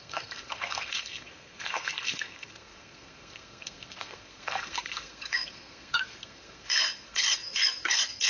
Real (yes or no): no